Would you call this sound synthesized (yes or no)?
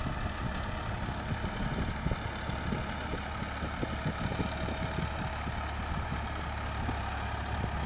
no